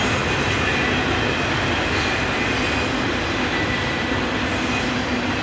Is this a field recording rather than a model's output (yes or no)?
yes